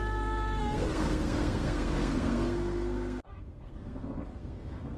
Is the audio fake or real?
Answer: fake